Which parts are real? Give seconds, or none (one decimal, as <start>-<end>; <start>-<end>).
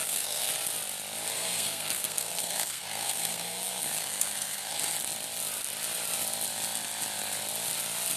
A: 0.5-1.3; 4.8-8.2